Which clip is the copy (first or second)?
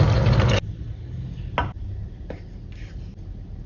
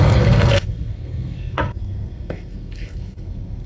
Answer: second